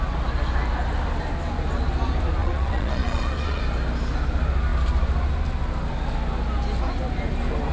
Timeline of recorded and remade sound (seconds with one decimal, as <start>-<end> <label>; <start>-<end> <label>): 0.0-2.4 recorded; 2.4-3.6 remade; 3.6-7.7 recorded